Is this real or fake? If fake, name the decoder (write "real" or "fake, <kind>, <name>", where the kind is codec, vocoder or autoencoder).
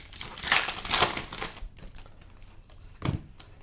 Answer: fake, vocoder, BigVGAN v2